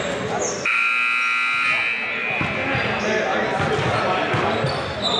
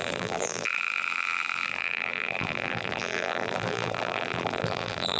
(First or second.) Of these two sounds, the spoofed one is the second